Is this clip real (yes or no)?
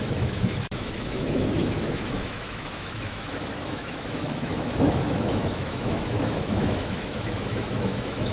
no